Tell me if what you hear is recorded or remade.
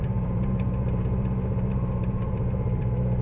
remade